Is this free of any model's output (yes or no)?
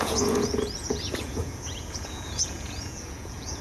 no